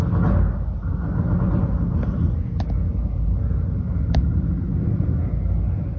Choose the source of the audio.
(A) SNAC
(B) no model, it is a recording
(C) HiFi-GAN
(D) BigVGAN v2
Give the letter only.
B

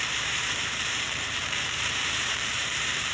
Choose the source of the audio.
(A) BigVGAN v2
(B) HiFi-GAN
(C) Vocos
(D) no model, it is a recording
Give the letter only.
A